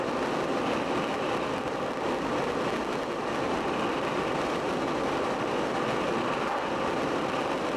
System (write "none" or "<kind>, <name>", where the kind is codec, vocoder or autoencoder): none